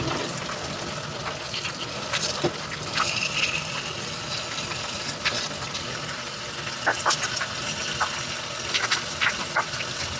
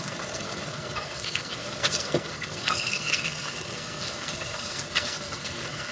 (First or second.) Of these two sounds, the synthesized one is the second